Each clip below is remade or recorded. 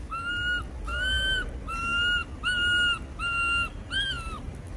recorded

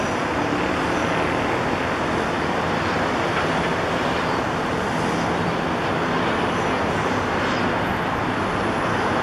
recorded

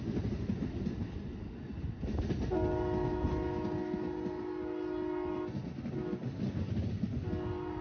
recorded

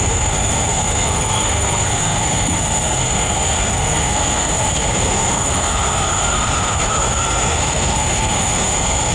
remade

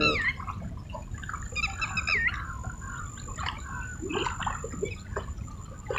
recorded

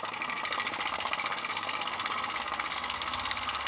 remade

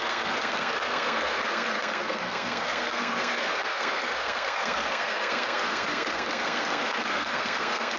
remade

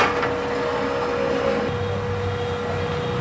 recorded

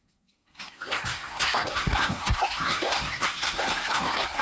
remade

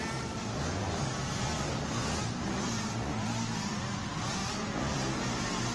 recorded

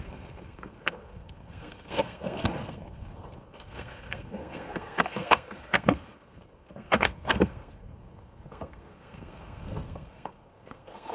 remade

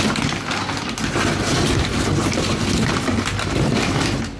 recorded